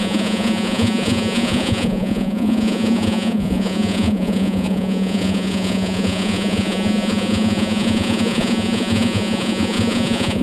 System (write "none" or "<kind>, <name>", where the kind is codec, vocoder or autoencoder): vocoder, Vocos